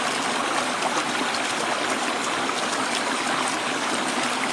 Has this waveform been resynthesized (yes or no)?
no